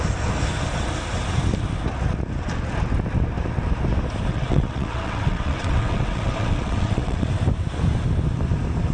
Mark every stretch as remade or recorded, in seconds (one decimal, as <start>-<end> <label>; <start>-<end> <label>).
0.0-4.3 recorded; 4.3-7.3 remade; 7.3-8.9 recorded